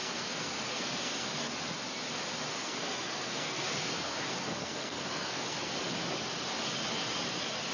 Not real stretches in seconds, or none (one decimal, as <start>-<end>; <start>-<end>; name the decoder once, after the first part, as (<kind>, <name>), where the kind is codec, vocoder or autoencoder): 0.0-1.5 (codec, SNAC); 2.5-5.7